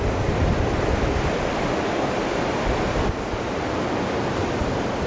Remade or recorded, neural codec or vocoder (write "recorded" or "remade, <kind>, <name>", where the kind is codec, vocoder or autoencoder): recorded